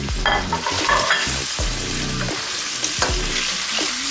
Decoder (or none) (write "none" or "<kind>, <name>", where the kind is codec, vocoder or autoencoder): none